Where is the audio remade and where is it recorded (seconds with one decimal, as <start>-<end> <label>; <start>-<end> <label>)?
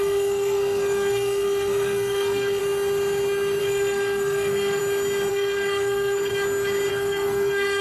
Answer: 0.0-2.6 remade; 2.6-3.6 recorded; 3.6-4.8 remade; 4.8-5.3 recorded; 5.3-6.3 remade; 6.3-6.9 recorded; 6.9-7.8 remade